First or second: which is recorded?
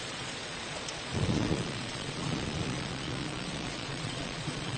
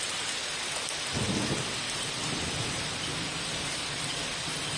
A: second